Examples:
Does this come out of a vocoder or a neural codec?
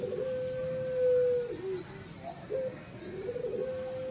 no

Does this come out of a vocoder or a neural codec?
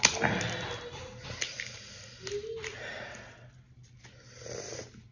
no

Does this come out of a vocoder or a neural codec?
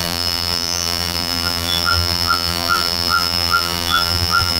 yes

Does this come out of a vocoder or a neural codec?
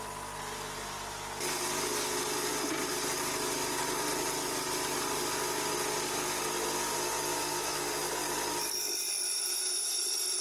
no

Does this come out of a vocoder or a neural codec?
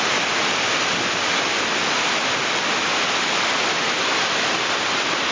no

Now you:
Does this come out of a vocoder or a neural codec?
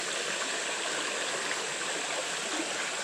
no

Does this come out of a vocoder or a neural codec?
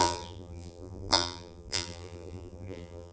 yes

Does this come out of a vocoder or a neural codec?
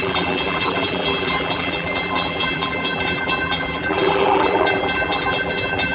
yes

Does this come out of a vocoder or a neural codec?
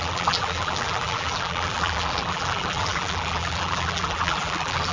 yes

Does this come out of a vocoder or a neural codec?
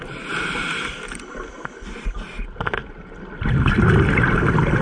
no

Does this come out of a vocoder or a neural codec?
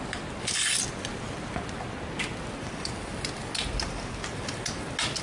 no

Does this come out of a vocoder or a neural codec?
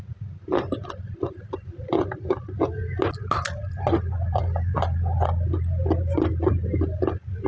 no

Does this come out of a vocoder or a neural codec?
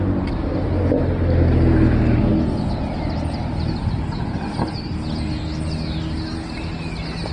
no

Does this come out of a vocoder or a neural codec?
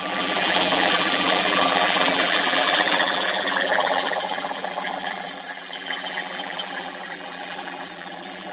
yes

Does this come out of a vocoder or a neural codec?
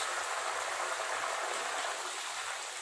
no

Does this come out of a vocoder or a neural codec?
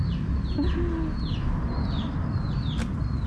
no